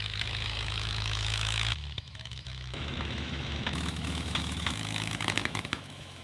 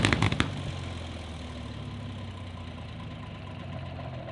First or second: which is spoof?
first